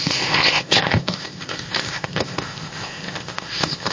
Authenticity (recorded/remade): remade